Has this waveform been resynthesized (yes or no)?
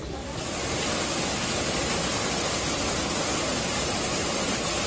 no